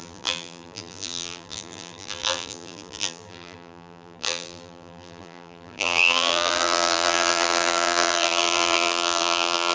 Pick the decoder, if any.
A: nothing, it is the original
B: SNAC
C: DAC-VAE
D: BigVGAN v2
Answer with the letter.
D